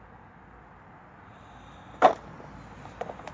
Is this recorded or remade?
recorded